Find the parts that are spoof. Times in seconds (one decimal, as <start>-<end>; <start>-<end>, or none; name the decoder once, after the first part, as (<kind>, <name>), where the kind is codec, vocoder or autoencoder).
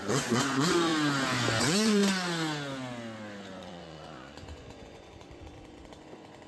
0.0-0.9 (vocoder, Vocos); 1.6-2.0; 3.6-6.5